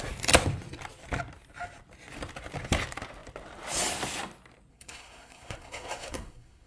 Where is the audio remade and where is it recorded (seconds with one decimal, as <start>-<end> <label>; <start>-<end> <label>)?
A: 0.0-4.7 recorded; 4.7-6.7 remade